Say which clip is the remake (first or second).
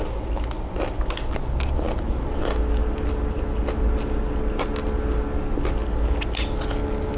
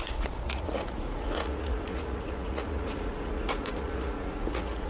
second